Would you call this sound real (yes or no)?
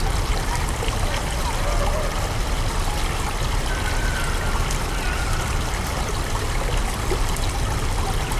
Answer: yes